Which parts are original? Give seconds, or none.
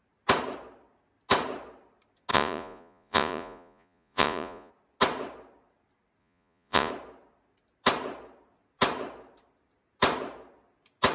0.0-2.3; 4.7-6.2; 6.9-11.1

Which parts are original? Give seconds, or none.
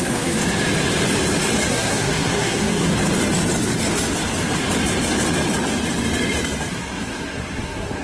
0.4-1.7; 2.9-6.7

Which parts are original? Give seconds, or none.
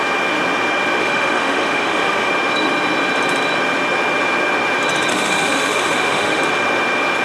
0.0-1.0; 2.3-5.1; 6.4-7.2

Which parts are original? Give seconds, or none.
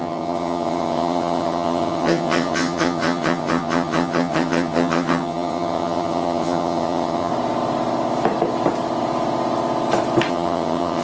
7.3-10.3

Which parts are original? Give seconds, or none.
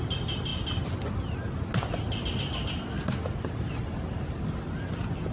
0.0-5.3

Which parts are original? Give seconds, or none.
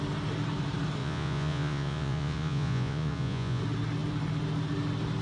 0.0-1.0; 3.6-5.2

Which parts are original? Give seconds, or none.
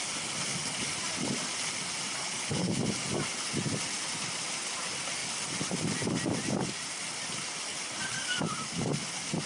0.0-2.2; 2.8-9.5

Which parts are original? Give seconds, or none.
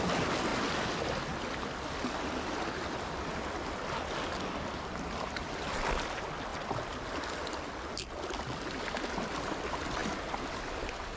0.0-11.2